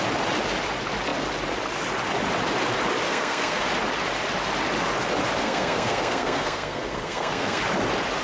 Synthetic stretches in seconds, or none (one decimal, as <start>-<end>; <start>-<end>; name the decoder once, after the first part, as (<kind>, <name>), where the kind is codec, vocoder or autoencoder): 3.1-3.6 (codec, SNAC); 5.4-7.6